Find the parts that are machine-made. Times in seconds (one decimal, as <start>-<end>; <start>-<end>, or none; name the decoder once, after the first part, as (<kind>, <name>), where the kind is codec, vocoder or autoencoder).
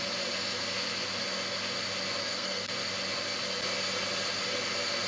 2.2-2.7 (codec, SNAC)